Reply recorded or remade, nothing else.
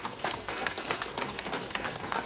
remade